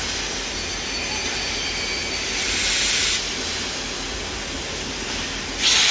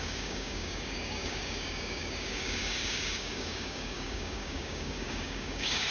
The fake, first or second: second